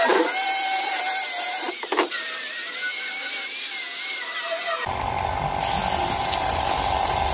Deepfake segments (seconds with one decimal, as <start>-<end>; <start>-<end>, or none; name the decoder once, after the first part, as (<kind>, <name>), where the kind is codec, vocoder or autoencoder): 0.0-4.7 (vocoder, BigVGAN v2); 6.0-7.3